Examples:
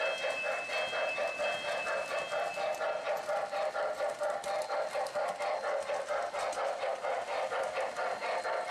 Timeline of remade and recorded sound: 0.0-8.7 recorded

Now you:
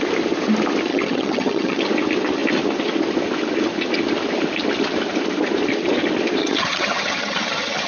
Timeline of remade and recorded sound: 0.0-0.9 recorded; 0.9-1.8 remade; 1.8-6.4 recorded; 6.4-7.9 remade

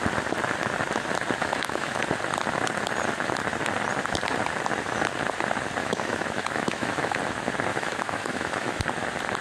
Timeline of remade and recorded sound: 0.0-1.4 recorded; 1.4-2.0 remade; 2.0-5.8 recorded; 5.8-7.2 remade; 7.2-7.7 recorded; 7.7-8.8 remade; 8.8-9.4 recorded

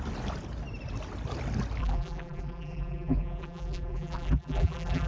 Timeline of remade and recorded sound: 0.0-1.8 recorded; 1.8-5.1 remade

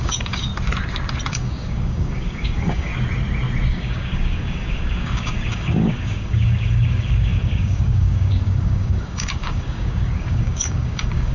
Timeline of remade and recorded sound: 0.0-0.5 remade; 0.5-1.3 recorded; 1.3-2.9 remade; 2.9-3.7 recorded; 3.7-11.3 remade

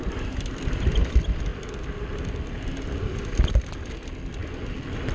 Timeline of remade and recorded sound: 0.0-5.1 recorded

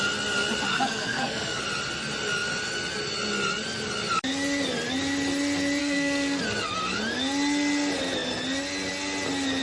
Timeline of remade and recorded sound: 0.0-0.7 recorded; 0.7-1.6 remade; 1.6-5.8 recorded; 5.8-6.4 remade; 6.4-9.6 recorded

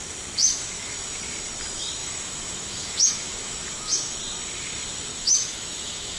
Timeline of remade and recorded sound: 0.0-0.4 recorded; 0.4-0.9 remade; 0.9-2.0 recorded; 2.0-4.2 remade; 4.2-5.1 recorded; 5.1-6.2 remade